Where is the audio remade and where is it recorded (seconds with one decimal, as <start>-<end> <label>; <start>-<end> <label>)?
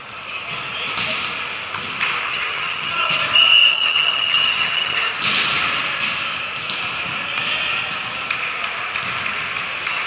0.0-2.3 recorded; 2.3-3.2 remade; 3.2-3.7 recorded; 3.7-5.1 remade; 5.1-10.1 recorded